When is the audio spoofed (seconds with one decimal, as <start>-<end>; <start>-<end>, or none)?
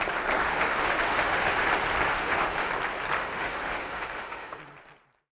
0.4-1.7; 2.1-2.7; 3.2-4.6